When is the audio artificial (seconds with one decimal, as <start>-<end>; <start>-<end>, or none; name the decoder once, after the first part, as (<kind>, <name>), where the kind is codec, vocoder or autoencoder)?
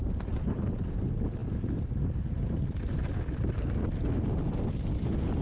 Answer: none